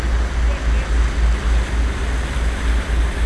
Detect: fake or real real